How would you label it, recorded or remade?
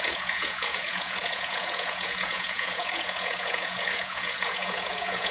remade